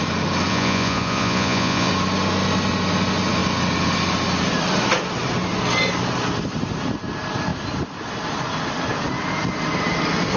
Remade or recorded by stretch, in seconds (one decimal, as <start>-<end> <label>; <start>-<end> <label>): 0.0-0.5 recorded; 0.5-1.9 remade; 1.9-10.4 recorded

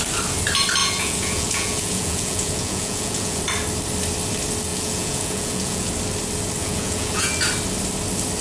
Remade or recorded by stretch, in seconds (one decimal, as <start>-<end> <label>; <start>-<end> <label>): 0.0-0.8 recorded; 0.8-3.4 remade; 3.4-4.7 recorded; 4.7-5.9 remade; 5.9-6.6 recorded; 6.6-7.3 remade; 7.3-8.4 recorded

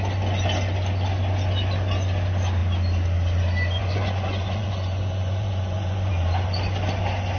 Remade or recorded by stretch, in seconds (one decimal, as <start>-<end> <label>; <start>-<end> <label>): 0.0-3.8 recorded; 3.8-6.1 remade; 6.1-7.4 recorded

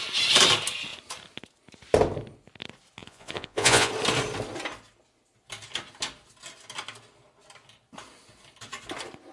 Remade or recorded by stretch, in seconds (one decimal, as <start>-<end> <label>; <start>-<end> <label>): 0.0-3.0 recorded; 3.0-3.9 remade; 3.9-9.3 recorded

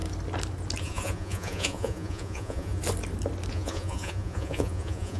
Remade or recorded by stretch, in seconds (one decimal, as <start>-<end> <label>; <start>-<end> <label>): 0.0-0.8 recorded; 0.8-2.8 remade; 2.8-3.5 recorded; 3.5-5.2 remade

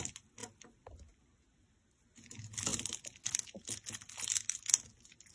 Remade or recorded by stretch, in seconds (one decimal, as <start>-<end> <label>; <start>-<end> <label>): 0.0-5.3 recorded

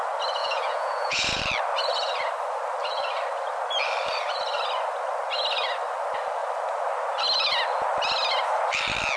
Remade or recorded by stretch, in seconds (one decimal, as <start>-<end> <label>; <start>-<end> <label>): 0.0-0.4 recorded; 0.4-1.4 remade; 1.4-9.2 recorded